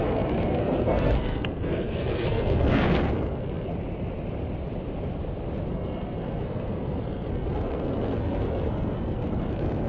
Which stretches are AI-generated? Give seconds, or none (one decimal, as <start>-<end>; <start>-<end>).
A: 0.0-3.7; 5.7-9.9